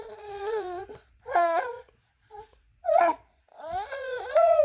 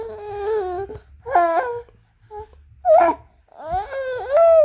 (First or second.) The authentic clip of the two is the second